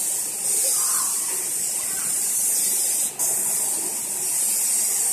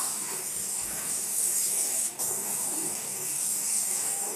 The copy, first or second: second